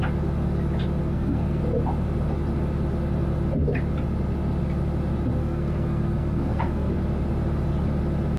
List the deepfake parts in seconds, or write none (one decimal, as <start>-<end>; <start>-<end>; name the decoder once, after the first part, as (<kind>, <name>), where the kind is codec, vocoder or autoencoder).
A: 1.0-1.6 (codec, SNAC); 5.4-6.9